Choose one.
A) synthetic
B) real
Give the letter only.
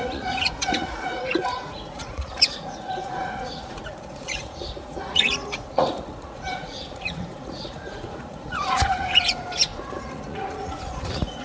A